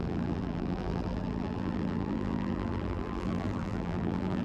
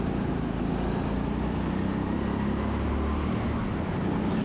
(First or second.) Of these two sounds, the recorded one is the second